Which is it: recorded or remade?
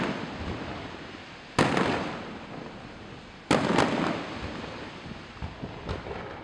recorded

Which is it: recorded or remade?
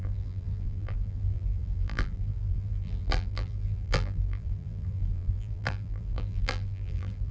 remade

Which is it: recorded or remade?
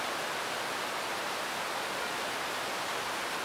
recorded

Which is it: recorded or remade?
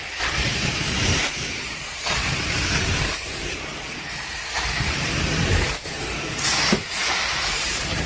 remade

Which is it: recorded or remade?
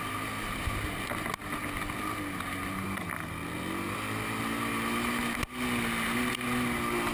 recorded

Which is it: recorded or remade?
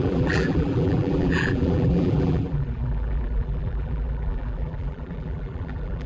remade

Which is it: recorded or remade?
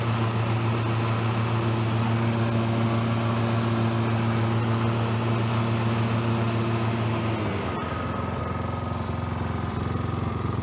recorded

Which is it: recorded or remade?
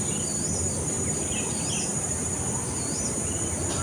recorded